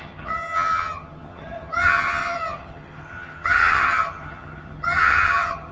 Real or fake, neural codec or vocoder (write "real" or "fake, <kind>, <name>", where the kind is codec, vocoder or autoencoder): fake, vocoder, HiFi-GAN